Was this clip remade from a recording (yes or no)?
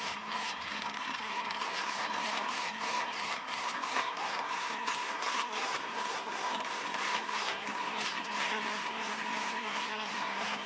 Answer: yes